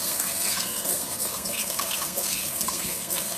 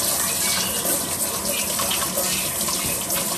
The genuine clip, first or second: second